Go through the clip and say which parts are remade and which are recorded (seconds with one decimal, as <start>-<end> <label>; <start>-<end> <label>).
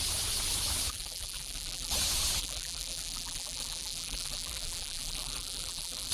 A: 0.0-0.9 recorded; 0.9-1.9 remade; 1.9-2.4 recorded; 2.4-6.1 remade